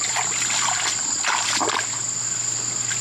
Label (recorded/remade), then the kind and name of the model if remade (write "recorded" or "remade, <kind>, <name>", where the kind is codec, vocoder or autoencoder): recorded